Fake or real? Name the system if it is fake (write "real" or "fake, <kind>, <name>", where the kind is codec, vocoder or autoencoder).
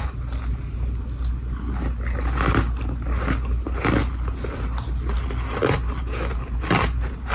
real